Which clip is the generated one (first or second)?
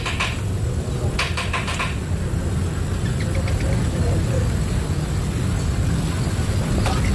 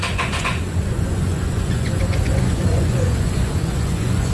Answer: second